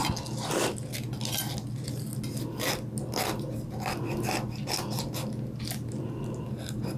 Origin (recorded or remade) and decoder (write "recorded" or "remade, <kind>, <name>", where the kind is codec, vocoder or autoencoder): recorded